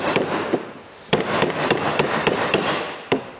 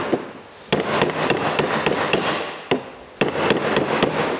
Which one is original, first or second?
second